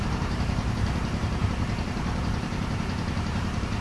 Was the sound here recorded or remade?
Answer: remade